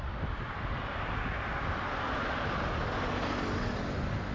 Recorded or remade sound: recorded